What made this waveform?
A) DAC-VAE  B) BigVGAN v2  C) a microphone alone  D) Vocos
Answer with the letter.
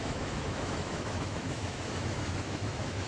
A